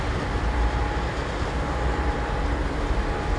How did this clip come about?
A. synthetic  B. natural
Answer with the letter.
A